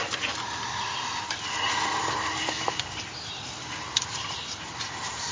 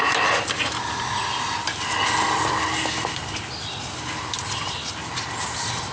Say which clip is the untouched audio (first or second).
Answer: second